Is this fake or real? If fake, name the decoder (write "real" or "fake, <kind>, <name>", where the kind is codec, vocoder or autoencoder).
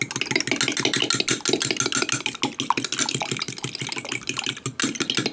real